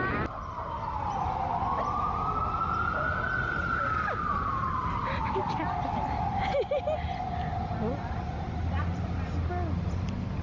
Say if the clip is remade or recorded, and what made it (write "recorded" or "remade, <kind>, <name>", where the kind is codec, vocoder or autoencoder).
recorded